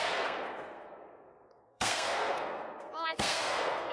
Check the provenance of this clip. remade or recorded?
remade